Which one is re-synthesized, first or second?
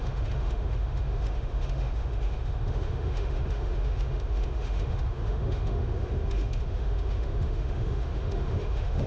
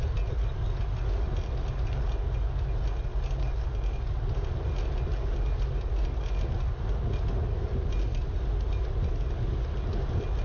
first